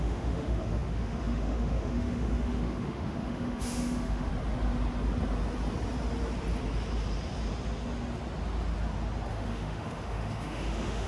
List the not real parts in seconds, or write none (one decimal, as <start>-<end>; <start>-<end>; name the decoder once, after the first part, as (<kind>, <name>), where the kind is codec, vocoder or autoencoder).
0.0-4.3 (autoencoder, DAC-VAE); 9.3-11.1